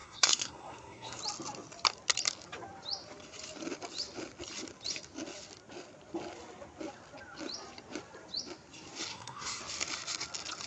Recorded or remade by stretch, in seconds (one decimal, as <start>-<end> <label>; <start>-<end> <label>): 0.0-1.2 remade; 1.2-9.1 recorded; 9.1-9.6 remade; 9.6-10.7 recorded